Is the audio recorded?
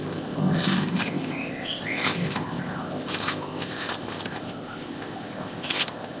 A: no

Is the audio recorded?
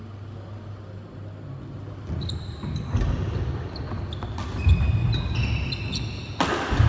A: yes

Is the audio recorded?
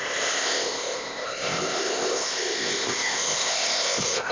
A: no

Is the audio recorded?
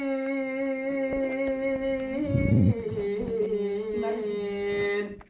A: yes